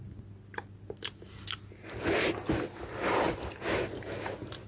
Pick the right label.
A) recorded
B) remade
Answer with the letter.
A